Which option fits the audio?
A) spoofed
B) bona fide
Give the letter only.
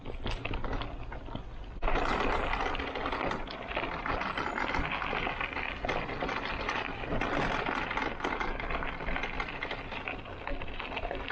B